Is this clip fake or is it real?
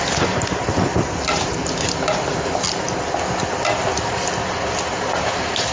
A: real